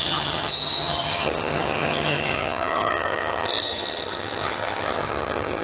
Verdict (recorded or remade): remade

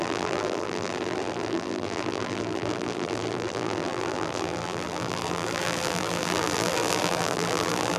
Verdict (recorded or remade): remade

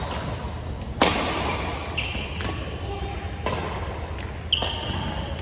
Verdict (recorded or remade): recorded